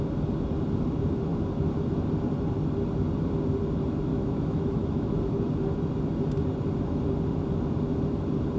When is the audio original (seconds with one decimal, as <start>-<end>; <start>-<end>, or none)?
0.0-4.1; 5.2-8.6